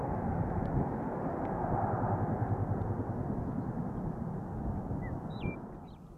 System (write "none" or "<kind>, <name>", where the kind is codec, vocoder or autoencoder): none